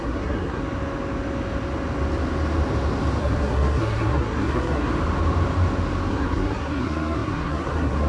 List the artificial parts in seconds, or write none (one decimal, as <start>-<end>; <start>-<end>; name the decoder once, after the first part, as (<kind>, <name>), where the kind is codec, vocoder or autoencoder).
0.0-0.6 (codec, SNAC); 3.2-4.9; 6.1-8.1